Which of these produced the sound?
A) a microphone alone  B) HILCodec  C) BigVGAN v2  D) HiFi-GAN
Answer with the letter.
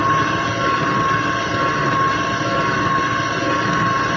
A